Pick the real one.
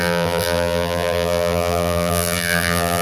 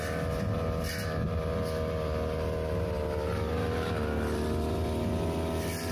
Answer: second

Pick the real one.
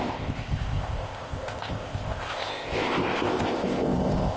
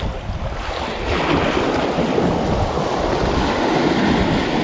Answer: second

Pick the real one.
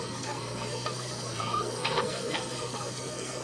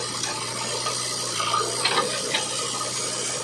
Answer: second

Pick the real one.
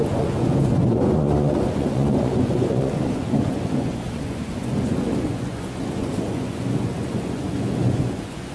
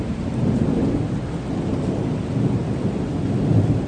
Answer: second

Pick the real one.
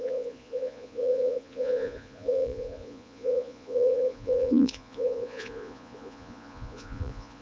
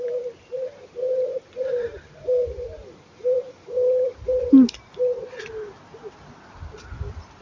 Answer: second